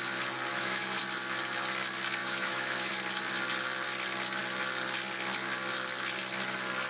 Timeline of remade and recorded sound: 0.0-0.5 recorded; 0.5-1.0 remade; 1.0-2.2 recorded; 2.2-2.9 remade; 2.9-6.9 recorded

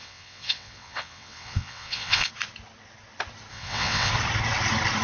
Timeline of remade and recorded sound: 0.0-2.3 remade; 2.3-3.5 recorded; 3.5-4.1 remade; 4.1-5.0 recorded

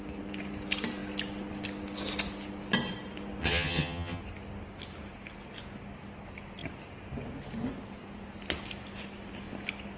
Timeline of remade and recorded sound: 0.0-3.4 recorded; 3.4-4.2 remade; 4.2-10.0 recorded

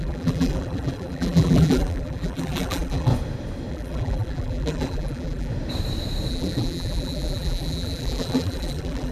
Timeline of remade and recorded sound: 0.0-3.1 remade; 3.1-3.7 recorded; 3.7-5.5 remade; 5.5-6.3 recorded; 6.3-9.1 remade

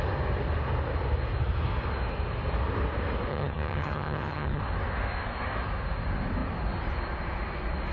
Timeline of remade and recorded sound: 0.0-3.3 recorded; 3.3-4.6 remade; 4.6-7.9 recorded